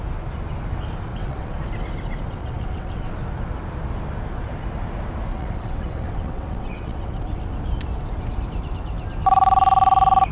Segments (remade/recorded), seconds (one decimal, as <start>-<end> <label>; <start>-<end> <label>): 0.0-1.1 recorded; 1.1-1.6 remade; 1.6-2.4 recorded; 2.4-3.1 remade; 3.1-5.3 recorded; 5.3-7.4 remade; 7.4-10.3 recorded